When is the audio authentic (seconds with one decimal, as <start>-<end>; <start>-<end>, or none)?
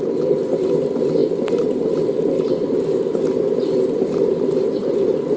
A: 0.0-5.4